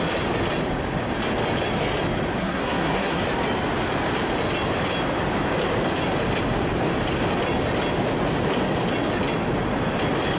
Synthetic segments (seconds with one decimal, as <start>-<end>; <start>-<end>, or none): 2.4-3.2